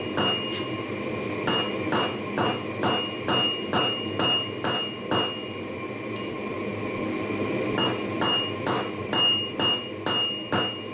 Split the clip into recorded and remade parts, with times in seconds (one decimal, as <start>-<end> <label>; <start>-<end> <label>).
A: 0.0-10.9 recorded